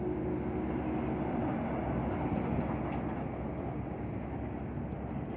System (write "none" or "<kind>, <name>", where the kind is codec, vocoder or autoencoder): none